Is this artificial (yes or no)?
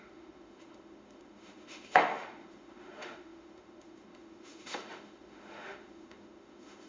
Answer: yes